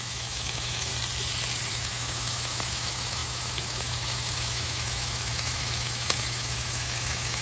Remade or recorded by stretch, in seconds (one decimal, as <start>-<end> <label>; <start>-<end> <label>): 0.0-0.9 remade; 0.9-1.7 recorded; 1.7-7.4 remade